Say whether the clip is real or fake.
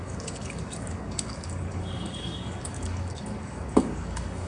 fake